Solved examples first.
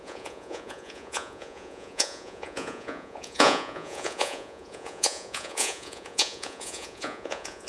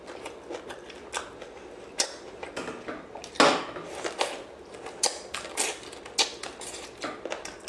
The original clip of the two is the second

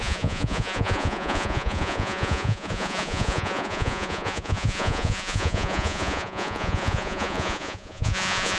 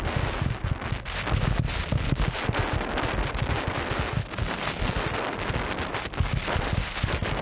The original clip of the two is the second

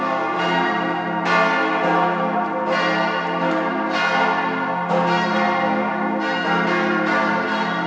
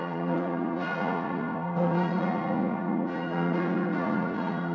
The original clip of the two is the first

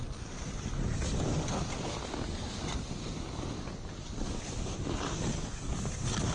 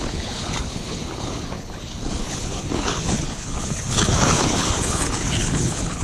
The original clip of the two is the first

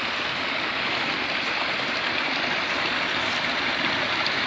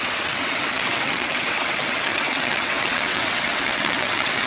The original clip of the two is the first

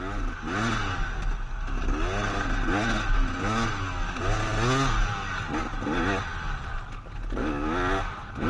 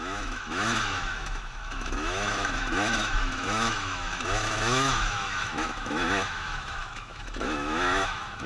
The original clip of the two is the first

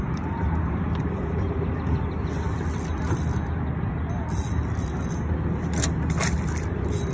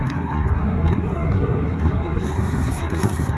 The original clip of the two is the first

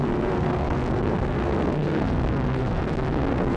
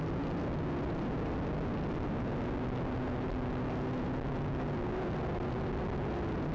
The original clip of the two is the second